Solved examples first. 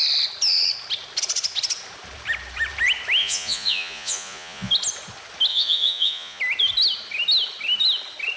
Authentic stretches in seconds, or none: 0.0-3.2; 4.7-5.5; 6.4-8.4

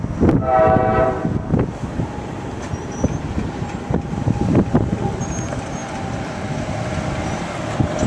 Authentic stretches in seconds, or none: 0.0-8.1

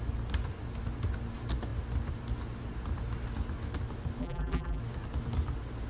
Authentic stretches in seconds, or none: 0.0-4.2; 4.8-5.9

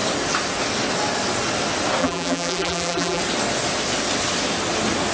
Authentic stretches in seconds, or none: 0.0-2.0; 3.2-5.1

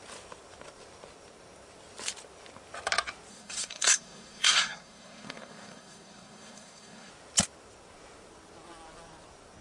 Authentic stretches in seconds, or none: 0.0-3.3; 7.1-9.6

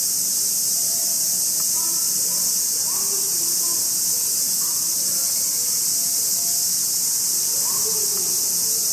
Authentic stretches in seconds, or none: 0.0-8.9

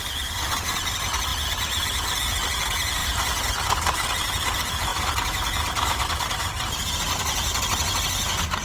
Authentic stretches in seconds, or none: 0.0-3.0; 3.6-8.6

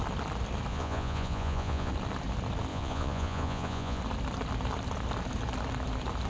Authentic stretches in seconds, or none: 0.0-0.7; 1.9-2.7; 4.0-6.3